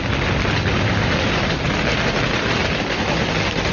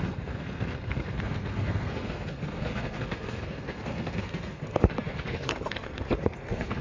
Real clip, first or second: first